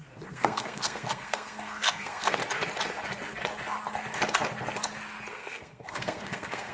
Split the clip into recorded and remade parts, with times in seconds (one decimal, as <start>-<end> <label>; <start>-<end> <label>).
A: 0.0-2.4 remade; 2.4-5.3 recorded; 5.3-6.7 remade